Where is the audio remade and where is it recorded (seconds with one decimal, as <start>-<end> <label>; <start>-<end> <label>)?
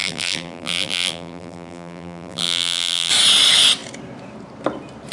0.0-3.1 remade; 3.1-5.1 recorded